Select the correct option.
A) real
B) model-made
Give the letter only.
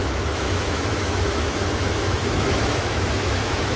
B